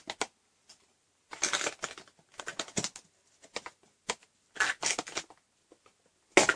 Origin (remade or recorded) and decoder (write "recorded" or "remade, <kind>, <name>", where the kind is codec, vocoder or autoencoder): recorded